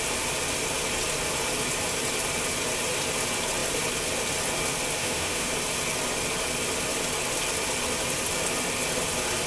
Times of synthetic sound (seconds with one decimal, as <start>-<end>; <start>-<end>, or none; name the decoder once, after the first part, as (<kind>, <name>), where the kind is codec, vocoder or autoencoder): 5.0-5.5 (autoencoder, DAC-VAE)